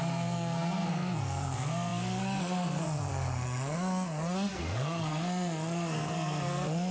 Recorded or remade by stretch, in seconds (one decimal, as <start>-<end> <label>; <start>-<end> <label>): 0.0-6.9 remade